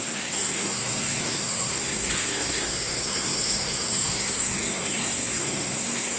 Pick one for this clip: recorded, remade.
remade